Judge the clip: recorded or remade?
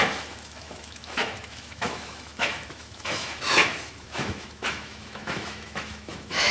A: remade